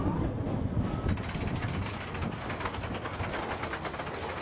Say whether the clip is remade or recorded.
recorded